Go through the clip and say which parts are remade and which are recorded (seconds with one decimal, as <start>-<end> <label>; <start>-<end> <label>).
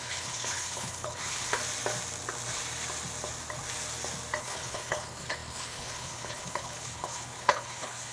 0.0-1.6 remade; 1.6-4.4 recorded; 4.4-8.1 remade